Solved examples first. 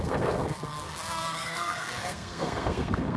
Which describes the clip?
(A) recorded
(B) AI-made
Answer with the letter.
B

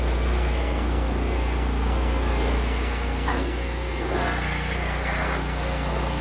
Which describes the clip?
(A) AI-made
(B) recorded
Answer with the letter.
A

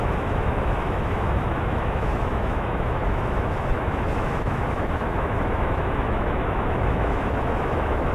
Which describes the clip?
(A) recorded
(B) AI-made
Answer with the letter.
B